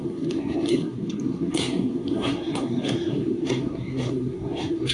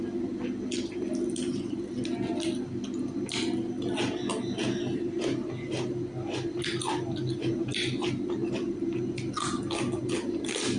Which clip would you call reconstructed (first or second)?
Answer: first